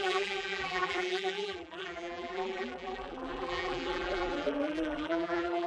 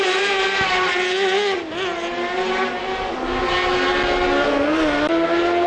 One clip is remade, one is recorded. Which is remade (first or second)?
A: first